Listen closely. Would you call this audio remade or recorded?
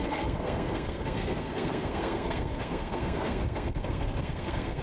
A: remade